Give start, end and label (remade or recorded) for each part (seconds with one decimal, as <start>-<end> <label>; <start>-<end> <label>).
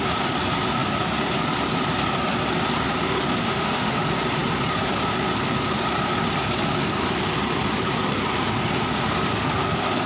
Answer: 0.0-3.4 recorded; 3.4-4.0 remade; 4.0-10.1 recorded